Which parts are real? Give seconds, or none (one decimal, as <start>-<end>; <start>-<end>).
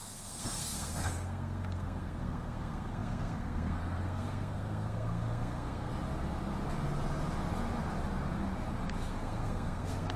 5.9-9.1